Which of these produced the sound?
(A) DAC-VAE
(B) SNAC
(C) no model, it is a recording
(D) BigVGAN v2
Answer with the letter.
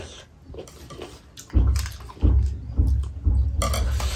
C